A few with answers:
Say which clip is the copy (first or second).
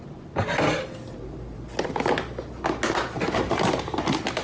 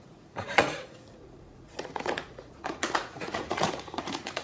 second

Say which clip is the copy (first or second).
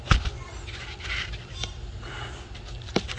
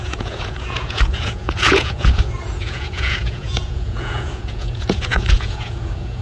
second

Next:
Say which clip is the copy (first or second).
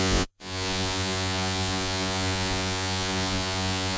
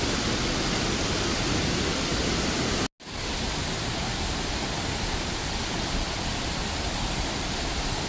first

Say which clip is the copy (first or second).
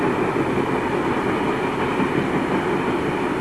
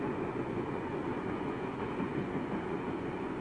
second